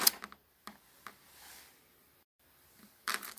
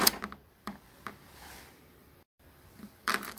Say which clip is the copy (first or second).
second